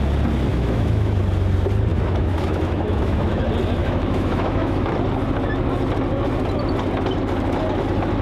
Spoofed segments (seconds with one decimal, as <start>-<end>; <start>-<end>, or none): 0.5-1.2; 1.9-3.4; 3.8-5.0